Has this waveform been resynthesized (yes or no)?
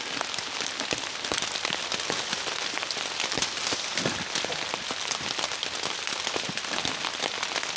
no